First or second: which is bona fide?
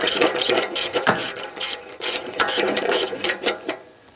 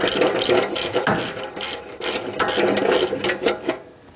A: second